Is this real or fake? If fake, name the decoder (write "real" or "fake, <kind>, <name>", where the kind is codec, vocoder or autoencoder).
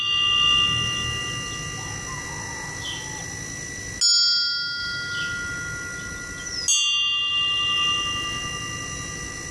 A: real